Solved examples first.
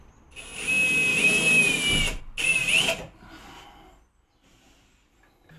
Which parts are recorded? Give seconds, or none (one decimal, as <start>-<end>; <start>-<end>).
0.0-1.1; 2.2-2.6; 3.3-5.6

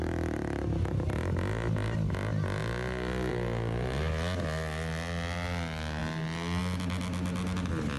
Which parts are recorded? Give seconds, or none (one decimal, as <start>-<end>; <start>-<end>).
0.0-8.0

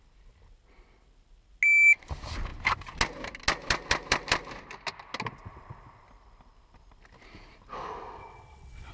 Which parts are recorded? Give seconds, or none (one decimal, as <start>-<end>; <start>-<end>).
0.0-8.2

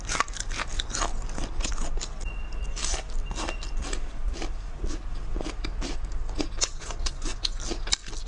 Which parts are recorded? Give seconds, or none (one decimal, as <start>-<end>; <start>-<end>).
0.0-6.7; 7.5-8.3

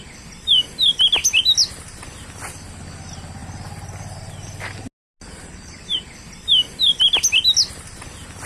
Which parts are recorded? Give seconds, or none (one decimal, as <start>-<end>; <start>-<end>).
0.0-8.5

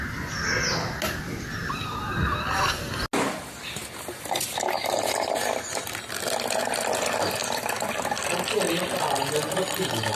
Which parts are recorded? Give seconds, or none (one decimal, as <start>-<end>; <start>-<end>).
0.0-10.2